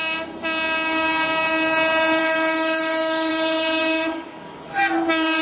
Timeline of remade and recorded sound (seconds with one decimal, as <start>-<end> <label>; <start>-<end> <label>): 0.0-2.2 recorded; 2.2-3.3 remade; 3.3-3.8 recorded; 3.8-4.6 remade; 4.6-5.4 recorded

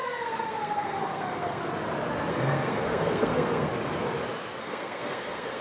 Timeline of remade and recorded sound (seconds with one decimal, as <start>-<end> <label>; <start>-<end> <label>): 0.0-1.6 remade; 1.6-2.3 recorded; 2.3-3.7 remade; 3.7-4.6 recorded; 4.6-5.6 remade

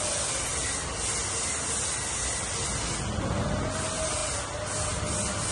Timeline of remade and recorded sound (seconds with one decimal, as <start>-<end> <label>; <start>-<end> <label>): 0.0-5.5 recorded

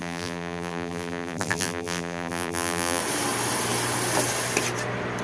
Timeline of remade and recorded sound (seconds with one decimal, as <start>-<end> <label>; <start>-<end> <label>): 0.0-3.0 remade; 3.0-5.2 recorded